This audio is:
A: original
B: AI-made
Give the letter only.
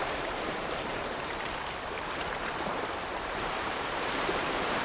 B